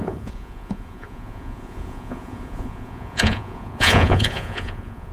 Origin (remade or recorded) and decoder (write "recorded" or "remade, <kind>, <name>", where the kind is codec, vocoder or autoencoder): remade, vocoder, Vocos